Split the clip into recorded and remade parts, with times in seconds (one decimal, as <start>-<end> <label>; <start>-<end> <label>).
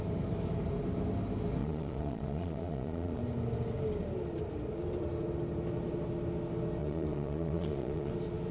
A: 0.0-1.6 recorded; 1.6-3.2 remade; 3.2-6.8 recorded; 6.8-8.1 remade; 8.1-8.5 recorded